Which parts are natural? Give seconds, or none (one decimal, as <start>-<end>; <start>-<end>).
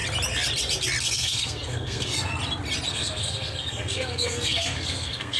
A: 0.0-1.0; 2.3-2.9